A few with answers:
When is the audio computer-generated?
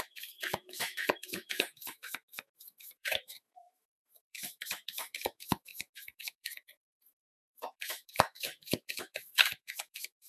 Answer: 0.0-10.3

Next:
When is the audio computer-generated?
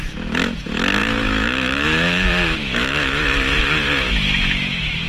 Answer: 0.0-5.1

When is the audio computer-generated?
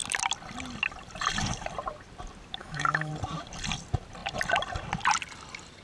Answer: 2.6-3.1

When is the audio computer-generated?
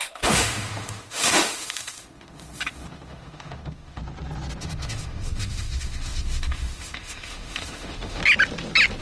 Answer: 0.0-4.0; 4.6-8.2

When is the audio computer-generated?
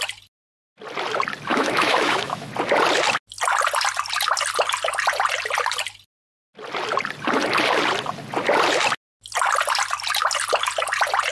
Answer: 1.5-2.5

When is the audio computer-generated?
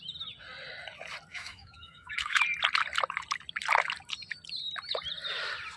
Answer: 1.3-2.4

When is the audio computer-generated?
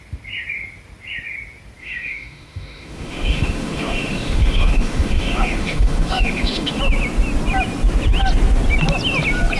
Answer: 1.8-6.8